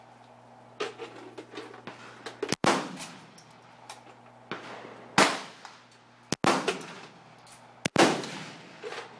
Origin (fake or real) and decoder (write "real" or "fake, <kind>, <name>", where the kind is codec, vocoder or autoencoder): real